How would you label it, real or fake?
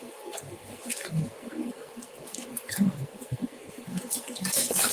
fake